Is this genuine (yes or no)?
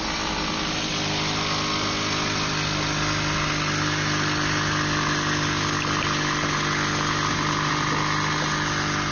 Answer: yes